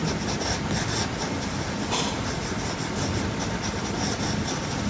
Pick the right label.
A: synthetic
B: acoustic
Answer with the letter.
B